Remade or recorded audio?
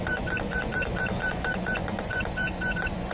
remade